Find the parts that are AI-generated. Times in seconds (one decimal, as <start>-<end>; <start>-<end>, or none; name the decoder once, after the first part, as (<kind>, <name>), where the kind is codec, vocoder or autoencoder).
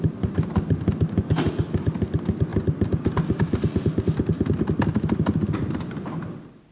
none